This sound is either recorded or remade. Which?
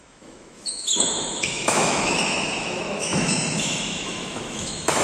remade